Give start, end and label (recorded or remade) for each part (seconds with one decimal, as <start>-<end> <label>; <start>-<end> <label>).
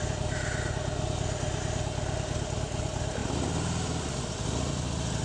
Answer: 0.0-5.2 recorded